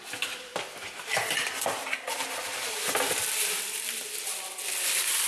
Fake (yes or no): no